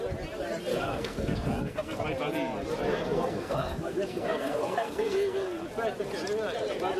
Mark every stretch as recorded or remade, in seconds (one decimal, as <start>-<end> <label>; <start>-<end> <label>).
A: 0.0-0.7 recorded; 0.7-2.0 remade; 2.0-2.9 recorded; 2.9-5.6 remade; 5.6-7.0 recorded